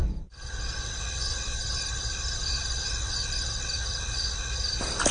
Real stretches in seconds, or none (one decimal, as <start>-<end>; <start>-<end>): 0.0-5.1